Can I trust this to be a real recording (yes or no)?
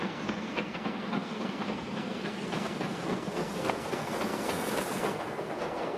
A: no